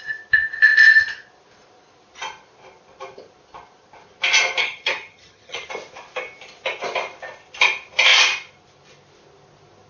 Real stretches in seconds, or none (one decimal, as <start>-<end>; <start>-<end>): 0.0-4.6; 5.7-9.9